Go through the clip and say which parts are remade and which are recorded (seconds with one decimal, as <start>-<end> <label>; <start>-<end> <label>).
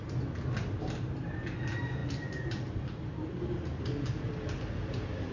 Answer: 0.0-5.3 recorded